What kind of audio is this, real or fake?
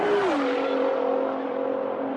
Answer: real